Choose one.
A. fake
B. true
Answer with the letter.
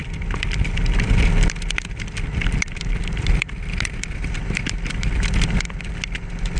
B